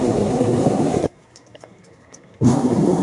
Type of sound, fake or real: fake